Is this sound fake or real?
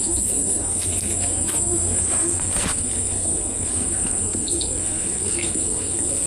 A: fake